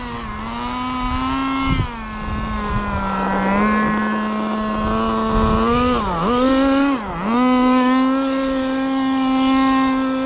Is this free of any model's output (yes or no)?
yes